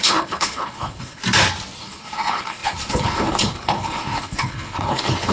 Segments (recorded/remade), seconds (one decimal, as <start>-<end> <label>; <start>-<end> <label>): 0.0-1.2 remade; 1.2-1.8 recorded; 1.8-5.3 remade